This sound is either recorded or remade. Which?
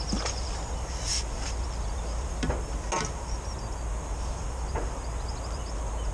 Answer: recorded